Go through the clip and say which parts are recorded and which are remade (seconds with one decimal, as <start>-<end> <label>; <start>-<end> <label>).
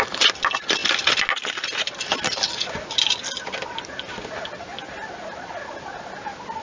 0.0-6.6 recorded